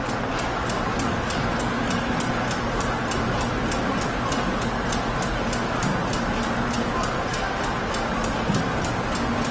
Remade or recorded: recorded